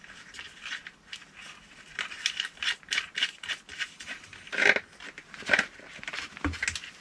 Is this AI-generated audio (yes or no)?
no